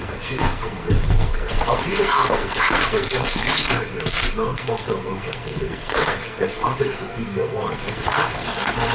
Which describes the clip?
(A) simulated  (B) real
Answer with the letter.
A